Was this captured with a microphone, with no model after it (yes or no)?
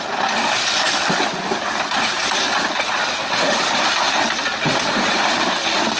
yes